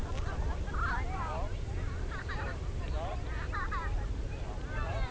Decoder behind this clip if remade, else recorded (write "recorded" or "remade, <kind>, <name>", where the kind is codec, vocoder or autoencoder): remade, vocoder, BigVGAN v2